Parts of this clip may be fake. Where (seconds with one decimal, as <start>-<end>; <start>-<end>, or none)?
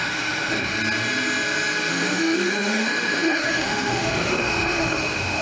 0.0-0.7; 1.9-5.4